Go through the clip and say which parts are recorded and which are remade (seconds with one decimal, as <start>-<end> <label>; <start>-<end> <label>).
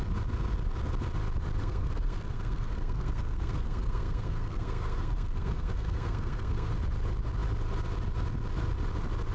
0.0-1.6 recorded; 1.6-6.7 remade; 6.7-9.3 recorded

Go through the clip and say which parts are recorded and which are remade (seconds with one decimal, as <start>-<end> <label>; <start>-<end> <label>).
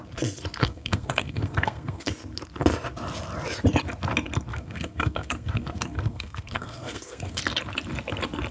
0.0-0.6 recorded; 0.6-2.1 remade; 2.1-4.5 recorded; 4.5-7.4 remade; 7.4-8.5 recorded